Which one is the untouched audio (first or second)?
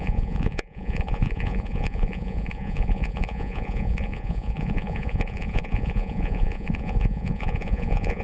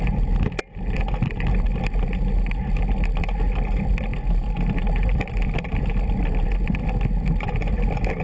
second